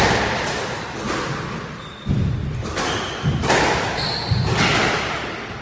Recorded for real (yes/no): yes